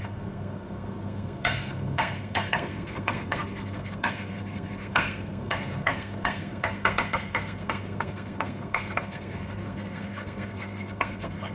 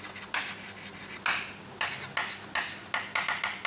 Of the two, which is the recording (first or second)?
second